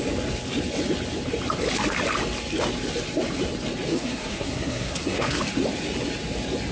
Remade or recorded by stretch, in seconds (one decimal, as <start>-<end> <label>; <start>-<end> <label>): 0.0-3.9 recorded; 3.9-5.4 remade; 5.4-6.7 recorded